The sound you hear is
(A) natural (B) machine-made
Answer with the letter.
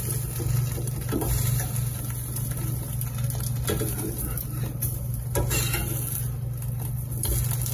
A